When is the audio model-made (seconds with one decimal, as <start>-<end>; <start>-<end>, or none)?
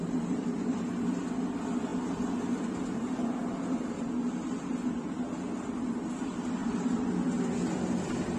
0.0-1.2; 6.6-7.1